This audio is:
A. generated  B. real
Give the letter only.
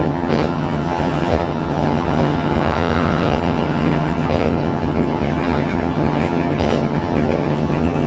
A